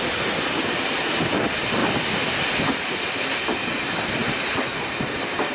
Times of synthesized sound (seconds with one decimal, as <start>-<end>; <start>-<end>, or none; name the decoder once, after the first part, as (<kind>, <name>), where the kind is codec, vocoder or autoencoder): none